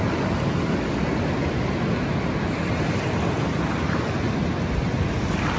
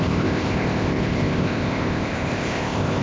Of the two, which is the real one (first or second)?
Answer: first